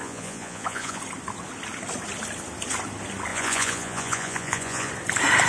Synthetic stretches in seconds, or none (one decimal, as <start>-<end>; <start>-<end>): 0.0-1.0; 3.3-4.9